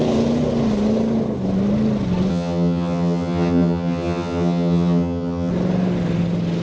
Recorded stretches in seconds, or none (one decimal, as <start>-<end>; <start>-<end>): 0.0-2.3; 5.5-6.6